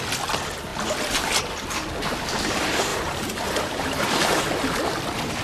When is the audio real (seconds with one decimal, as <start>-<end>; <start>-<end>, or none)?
0.0-2.9; 4.4-5.4